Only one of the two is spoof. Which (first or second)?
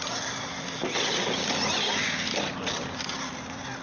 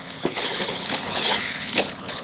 second